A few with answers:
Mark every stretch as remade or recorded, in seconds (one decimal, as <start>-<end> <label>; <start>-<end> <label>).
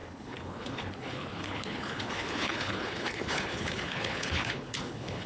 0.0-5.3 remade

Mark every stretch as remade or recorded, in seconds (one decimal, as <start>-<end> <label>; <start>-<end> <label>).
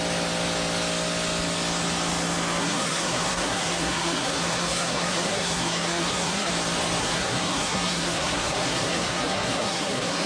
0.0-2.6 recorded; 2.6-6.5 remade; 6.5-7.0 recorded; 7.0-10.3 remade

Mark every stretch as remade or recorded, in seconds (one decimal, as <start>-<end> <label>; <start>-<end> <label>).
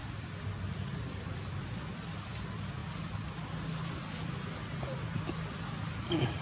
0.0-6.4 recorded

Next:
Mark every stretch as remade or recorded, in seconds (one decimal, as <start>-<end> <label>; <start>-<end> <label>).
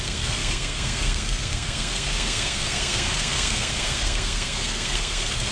0.0-5.5 remade